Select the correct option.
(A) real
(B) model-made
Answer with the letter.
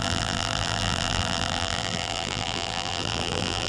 B